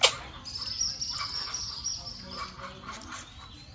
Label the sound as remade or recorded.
recorded